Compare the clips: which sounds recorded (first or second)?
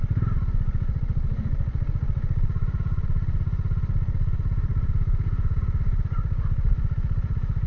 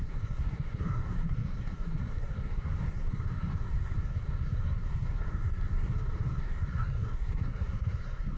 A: first